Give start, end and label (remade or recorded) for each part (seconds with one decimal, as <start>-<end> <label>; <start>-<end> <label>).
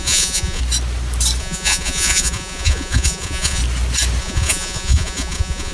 0.0-0.6 remade; 0.6-1.4 recorded; 1.4-3.6 remade; 3.6-4.2 recorded; 4.2-5.7 remade